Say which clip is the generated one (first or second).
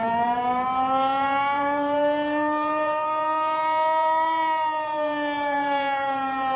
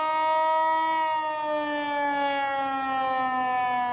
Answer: first